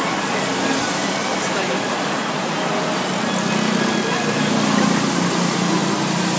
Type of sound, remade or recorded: recorded